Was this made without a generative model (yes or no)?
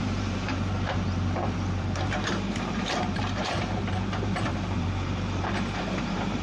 no